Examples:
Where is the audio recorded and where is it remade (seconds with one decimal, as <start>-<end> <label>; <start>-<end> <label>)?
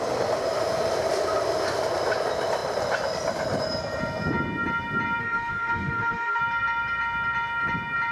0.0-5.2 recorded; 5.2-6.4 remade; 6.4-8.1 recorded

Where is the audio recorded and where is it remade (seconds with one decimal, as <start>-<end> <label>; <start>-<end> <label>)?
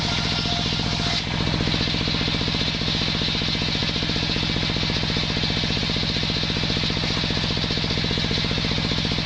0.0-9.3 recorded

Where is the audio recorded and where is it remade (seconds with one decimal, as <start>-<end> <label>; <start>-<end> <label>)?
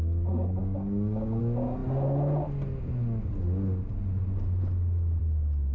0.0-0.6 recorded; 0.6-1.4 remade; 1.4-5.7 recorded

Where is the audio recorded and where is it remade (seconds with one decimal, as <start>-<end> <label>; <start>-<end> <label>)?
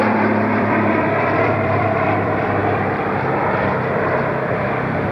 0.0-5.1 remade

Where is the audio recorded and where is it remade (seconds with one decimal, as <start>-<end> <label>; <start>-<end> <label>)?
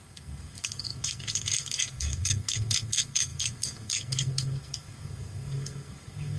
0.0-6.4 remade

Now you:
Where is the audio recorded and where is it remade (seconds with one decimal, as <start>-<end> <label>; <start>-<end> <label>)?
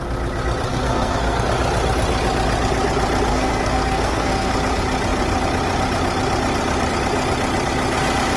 0.0-0.7 recorded; 0.7-1.5 remade; 1.5-3.3 recorded; 3.3-4.5 remade; 4.5-8.4 recorded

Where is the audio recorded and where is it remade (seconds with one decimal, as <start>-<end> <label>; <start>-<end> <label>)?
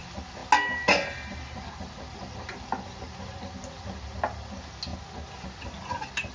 0.0-6.3 recorded